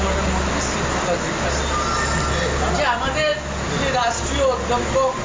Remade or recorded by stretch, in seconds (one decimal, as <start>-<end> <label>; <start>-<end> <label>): 0.0-5.2 recorded